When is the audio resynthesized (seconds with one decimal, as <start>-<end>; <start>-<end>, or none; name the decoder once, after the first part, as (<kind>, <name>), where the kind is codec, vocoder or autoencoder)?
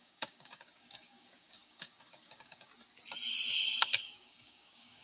0.0-2.7 (codec, DAC); 3.8-5.0